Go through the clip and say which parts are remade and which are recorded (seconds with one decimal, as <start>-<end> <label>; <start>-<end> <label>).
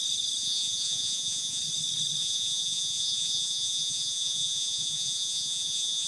0.0-0.4 recorded; 0.4-1.6 remade; 1.6-2.2 recorded; 2.2-6.1 remade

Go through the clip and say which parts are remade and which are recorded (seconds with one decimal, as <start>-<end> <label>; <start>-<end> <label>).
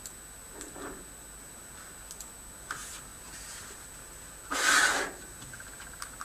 0.0-6.2 recorded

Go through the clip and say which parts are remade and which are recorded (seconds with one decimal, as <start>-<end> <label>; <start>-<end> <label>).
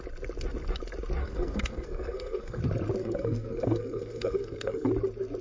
0.0-1.2 recorded; 1.2-2.6 remade; 2.6-3.0 recorded; 3.0-4.9 remade; 4.9-5.4 recorded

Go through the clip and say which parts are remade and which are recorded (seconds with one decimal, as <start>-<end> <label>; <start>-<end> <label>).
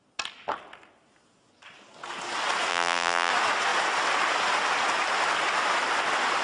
0.0-2.7 recorded; 2.7-3.3 remade; 3.3-6.4 recorded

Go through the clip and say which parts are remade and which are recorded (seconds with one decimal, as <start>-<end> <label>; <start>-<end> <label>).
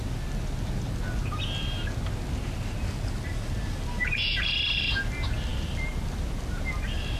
0.0-7.2 recorded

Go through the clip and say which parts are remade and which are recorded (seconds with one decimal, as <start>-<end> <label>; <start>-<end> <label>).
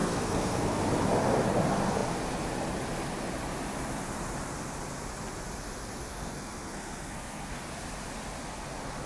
0.0-0.8 remade; 0.8-6.1 recorded; 6.1-7.6 remade; 7.6-9.1 recorded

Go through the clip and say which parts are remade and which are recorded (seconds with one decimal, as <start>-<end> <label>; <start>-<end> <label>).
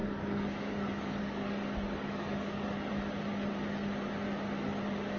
0.0-2.9 remade; 2.9-5.2 recorded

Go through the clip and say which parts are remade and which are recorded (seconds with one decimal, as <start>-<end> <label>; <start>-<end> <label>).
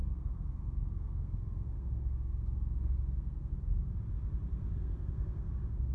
0.0-3.5 remade; 3.5-4.6 recorded; 4.6-5.5 remade; 5.5-5.9 recorded